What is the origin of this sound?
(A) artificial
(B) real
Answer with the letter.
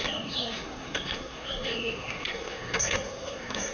A